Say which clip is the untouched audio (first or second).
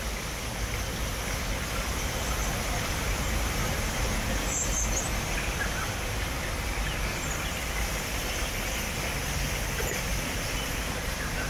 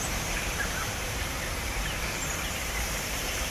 first